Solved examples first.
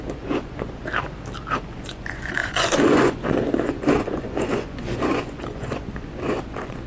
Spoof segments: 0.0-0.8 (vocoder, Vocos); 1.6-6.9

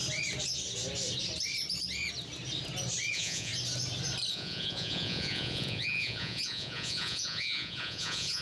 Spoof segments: 3.1-3.5 (vocoder, Vocos); 4.3-8.4

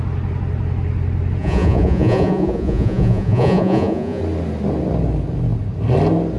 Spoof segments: 1.4-4.2 (vocoder, Vocos)